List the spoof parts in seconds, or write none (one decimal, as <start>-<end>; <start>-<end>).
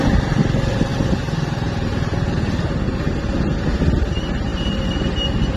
none